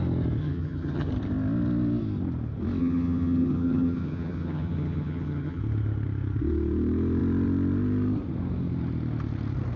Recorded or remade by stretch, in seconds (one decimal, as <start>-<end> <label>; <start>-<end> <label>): 0.0-0.4 recorded; 0.4-1.1 remade; 1.1-2.8 recorded; 2.8-5.6 remade; 5.6-9.8 recorded